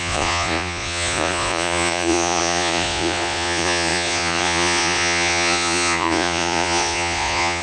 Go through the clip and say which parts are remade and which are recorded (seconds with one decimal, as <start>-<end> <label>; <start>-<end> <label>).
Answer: 0.0-7.6 remade